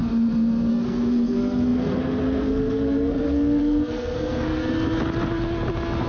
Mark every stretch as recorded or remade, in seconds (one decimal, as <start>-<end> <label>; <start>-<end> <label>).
0.0-0.7 recorded; 0.7-4.6 remade; 4.6-6.1 recorded